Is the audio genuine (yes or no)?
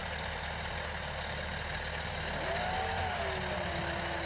yes